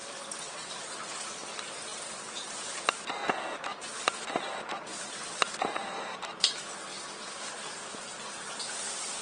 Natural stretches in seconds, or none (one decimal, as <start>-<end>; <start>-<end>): 0.8-4.9; 6.5-6.9; 7.9-9.2